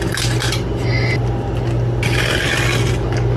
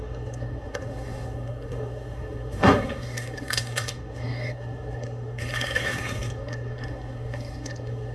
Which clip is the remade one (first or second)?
second